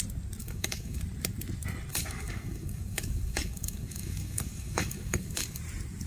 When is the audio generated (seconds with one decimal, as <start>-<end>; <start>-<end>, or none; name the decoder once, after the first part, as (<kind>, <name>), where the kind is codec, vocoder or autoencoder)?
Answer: 0.4-1.0 (codec, DAC); 1.9-5.6